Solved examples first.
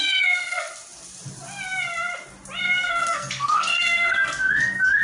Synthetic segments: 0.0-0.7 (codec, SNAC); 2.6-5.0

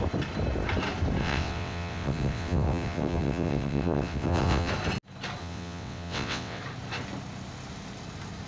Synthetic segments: 1.2-4.7 (vocoder, WaveNeXt); 5.4-6.6

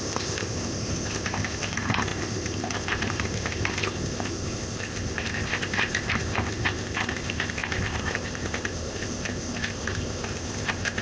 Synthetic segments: 0.0-11.0 (codec, ZipCodec)